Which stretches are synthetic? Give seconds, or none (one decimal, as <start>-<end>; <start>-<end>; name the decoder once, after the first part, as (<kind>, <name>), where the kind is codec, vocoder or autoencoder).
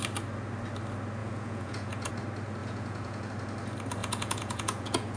1.2-2.1 (vocoder, Vocos); 2.6-3.3; 4.0-5.2